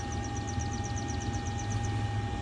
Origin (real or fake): real